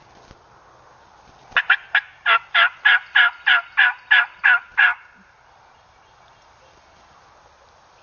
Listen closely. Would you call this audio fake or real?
real